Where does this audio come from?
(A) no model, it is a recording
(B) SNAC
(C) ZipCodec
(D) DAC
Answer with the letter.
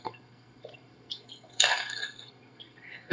B